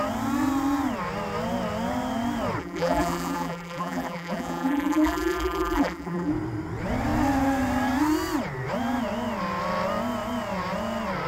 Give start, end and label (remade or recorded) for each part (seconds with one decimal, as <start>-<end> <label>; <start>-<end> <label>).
0.0-2.6 recorded; 2.6-6.3 remade; 6.3-11.3 recorded